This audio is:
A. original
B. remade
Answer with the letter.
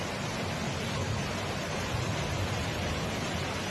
A